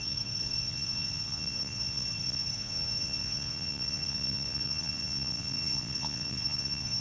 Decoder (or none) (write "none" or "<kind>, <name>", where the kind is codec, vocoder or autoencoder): vocoder, Vocos